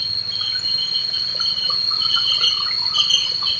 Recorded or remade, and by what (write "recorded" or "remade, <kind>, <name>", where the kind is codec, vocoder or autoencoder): recorded